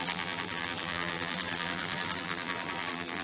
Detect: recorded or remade remade